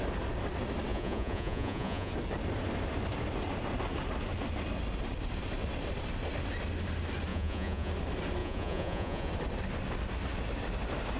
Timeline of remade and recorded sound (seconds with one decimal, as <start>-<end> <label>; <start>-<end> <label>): 0.0-0.9 recorded; 0.9-2.1 remade; 2.1-7.3 recorded; 7.3-7.9 remade; 7.9-8.4 recorded; 8.4-9.3 remade; 9.3-11.2 recorded

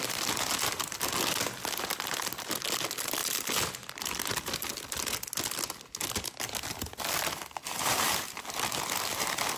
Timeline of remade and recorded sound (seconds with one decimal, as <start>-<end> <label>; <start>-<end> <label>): 0.0-9.6 recorded

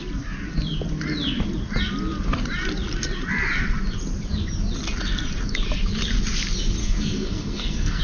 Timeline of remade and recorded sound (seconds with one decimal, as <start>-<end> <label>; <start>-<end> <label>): 0.0-6.8 recorded; 6.8-8.0 remade

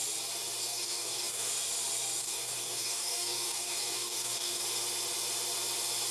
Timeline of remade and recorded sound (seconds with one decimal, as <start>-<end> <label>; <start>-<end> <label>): 0.0-0.6 recorded; 0.6-1.5 remade; 1.5-2.2 recorded; 2.2-4.6 remade; 4.6-6.1 recorded

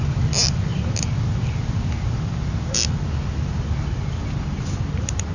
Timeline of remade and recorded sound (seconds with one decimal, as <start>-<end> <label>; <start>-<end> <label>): 0.0-5.3 recorded